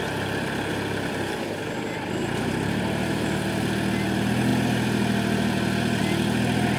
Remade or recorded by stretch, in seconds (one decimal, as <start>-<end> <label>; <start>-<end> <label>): 0.0-6.8 recorded